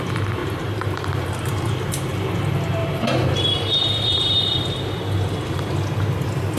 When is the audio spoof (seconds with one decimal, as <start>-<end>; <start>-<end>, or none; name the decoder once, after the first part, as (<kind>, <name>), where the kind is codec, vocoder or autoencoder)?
0.4-1.7 (vocoder, BigVGAN v2); 2.8-4.4

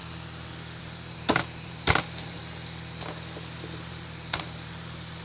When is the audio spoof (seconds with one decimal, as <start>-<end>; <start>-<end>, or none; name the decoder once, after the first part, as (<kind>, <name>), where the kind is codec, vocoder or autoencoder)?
0.8-2.4 (vocoder, BigVGAN v2); 3.9-5.2

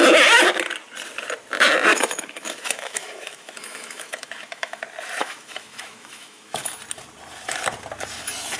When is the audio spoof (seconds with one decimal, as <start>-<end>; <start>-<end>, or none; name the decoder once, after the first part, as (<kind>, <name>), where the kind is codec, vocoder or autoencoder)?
1.9-4.8 (autoencoder, DAC-VAE); 5.2-6.7

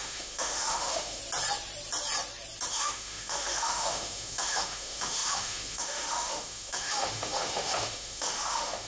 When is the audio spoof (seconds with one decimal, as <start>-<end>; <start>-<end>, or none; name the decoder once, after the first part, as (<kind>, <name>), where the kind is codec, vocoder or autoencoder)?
0.0-1.2 (autoencoder, DAC-VAE); 2.7-8.9